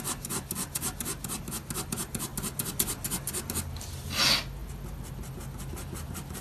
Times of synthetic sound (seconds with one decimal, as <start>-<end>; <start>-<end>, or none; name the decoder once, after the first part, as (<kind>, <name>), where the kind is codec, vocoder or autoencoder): none